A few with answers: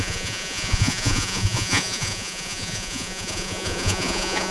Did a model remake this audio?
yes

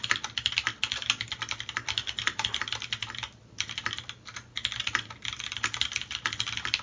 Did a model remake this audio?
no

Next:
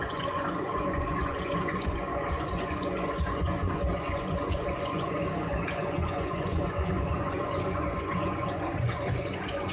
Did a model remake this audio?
yes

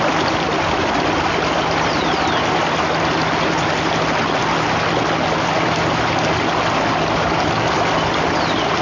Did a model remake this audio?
no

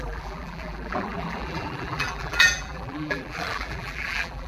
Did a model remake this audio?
yes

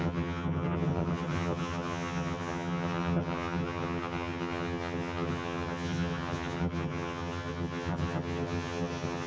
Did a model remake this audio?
yes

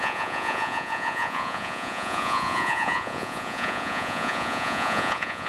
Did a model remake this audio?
yes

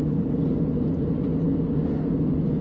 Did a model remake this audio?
no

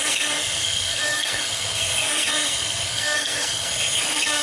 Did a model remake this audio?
yes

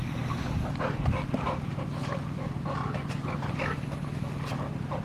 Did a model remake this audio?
no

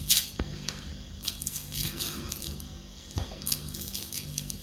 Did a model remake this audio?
yes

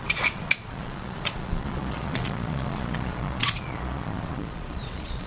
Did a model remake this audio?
yes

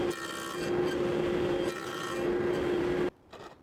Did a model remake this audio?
no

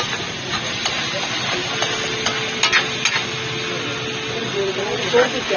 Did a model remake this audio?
no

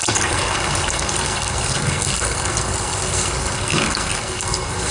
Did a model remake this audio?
yes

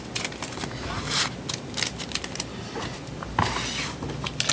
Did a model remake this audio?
no